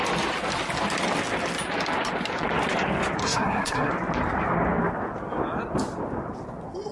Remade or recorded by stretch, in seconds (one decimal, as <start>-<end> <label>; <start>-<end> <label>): 0.0-3.2 recorded; 3.2-3.9 remade; 3.9-6.9 recorded